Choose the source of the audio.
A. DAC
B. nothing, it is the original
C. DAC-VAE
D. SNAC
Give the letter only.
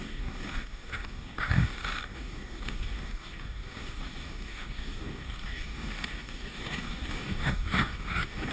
A